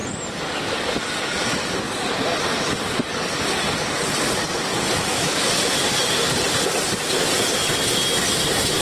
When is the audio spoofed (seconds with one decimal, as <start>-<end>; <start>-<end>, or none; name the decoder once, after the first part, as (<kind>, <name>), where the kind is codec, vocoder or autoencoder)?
5.1-5.6 (autoencoder, DAC-VAE)